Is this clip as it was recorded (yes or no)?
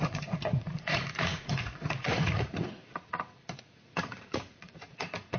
no